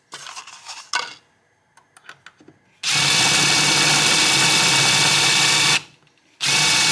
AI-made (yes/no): no